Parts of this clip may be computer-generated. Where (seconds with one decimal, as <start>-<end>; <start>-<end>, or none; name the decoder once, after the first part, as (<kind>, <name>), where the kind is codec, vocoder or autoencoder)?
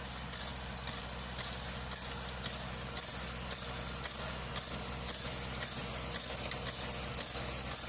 0.5-1.0 (vocoder, BigVGAN v2)